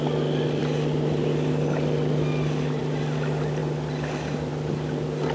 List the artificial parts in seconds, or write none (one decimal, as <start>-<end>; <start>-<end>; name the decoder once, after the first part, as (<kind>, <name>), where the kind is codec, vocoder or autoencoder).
none